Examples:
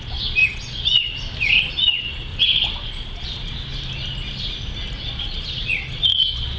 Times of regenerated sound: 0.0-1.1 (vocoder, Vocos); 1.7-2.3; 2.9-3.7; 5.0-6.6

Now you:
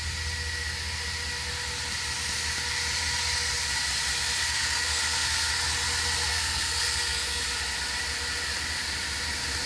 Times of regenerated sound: 4.4-5.5 (codec, SNAC); 6.3-7.4

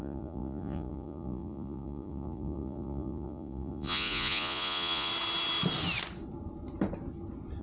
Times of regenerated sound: 0.0-5.1 (vocoder, Vocos)

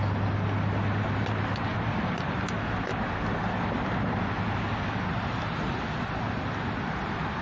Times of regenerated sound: 1.7-2.2 (vocoder, BigVGAN v2)